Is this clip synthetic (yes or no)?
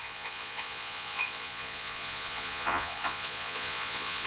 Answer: yes